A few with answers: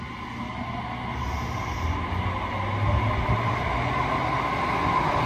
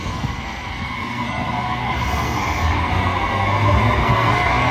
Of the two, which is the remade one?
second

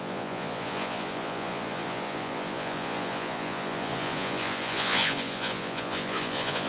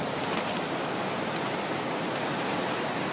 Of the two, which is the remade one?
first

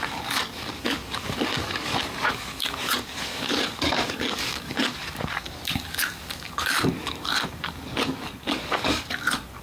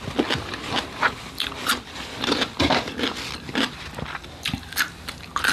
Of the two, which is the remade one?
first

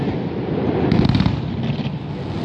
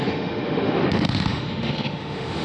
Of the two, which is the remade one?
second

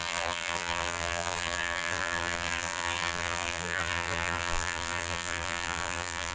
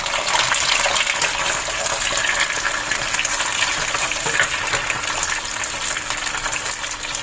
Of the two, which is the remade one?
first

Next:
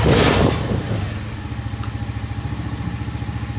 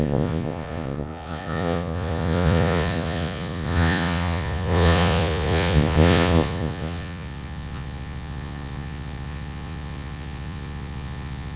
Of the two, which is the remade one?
second